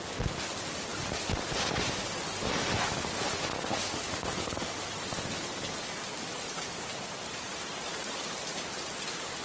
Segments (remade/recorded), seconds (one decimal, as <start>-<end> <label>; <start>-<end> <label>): 0.0-9.4 recorded